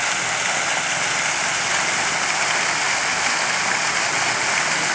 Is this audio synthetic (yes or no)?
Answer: no